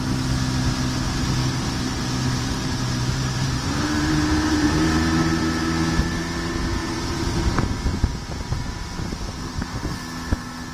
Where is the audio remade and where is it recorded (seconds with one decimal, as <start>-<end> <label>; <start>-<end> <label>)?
0.0-1.4 recorded; 1.4-5.4 remade; 5.4-7.9 recorded; 7.9-8.8 remade; 8.8-10.7 recorded